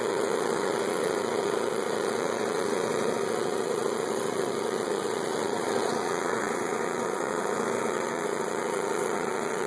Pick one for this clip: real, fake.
fake